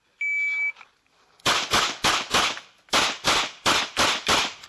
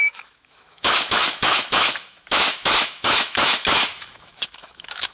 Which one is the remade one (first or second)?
second